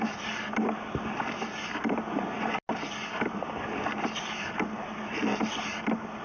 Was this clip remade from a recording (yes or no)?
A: no